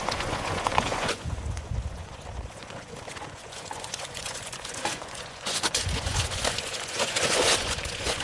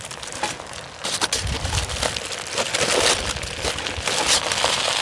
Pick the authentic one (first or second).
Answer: second